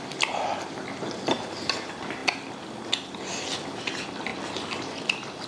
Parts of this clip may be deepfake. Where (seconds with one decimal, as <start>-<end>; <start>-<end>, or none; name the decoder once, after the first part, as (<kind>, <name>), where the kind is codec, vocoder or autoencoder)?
none